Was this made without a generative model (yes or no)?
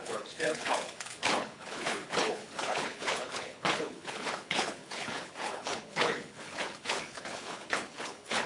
no